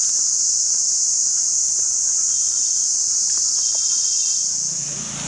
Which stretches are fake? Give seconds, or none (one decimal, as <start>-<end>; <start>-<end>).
none